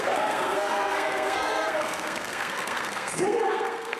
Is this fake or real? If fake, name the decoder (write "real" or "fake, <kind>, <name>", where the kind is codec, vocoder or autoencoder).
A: fake, codec, SNAC